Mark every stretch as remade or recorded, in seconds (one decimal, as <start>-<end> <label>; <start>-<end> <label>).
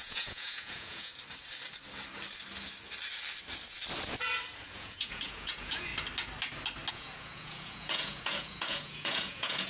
0.0-1.1 remade; 1.1-4.7 recorded; 4.7-5.9 remade; 5.9-6.9 recorded; 6.9-9.7 remade